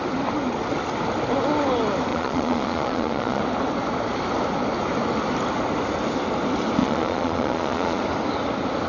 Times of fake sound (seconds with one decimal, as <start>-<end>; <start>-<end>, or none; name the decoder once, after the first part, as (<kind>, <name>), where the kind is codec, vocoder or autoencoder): 2.1-3.4 (vocoder, Vocos); 6.8-8.0